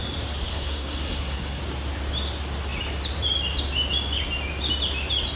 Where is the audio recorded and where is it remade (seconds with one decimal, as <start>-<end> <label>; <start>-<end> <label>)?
0.0-0.5 recorded; 0.5-1.6 remade; 1.6-5.4 recorded